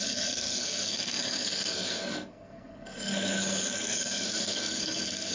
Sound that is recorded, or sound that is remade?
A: remade